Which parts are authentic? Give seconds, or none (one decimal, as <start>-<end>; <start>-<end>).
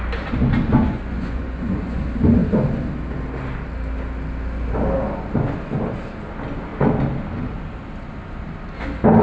0.0-0.7; 2.0-9.2